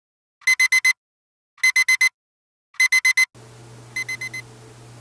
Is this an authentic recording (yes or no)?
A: yes